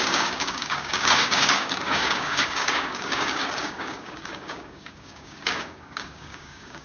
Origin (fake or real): fake